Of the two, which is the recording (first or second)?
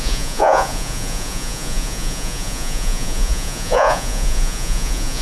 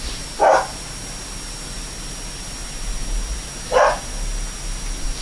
second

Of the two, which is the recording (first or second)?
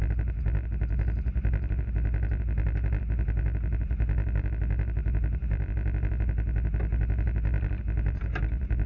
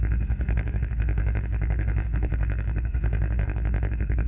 first